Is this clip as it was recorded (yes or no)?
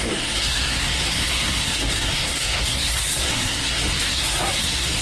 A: no